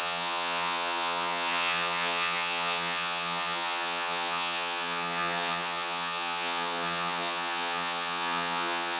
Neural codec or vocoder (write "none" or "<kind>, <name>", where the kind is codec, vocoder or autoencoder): vocoder, HiFi-GAN